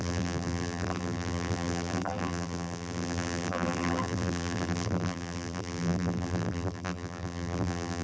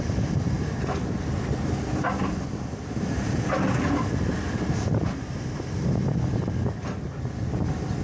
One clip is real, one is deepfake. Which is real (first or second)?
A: second